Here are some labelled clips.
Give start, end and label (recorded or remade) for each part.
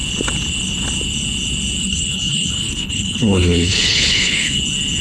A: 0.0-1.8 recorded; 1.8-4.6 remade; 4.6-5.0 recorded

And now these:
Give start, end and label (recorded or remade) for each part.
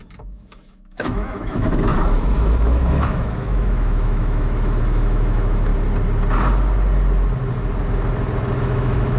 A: 0.0-5.7 remade; 5.7-8.6 recorded; 8.6-9.2 remade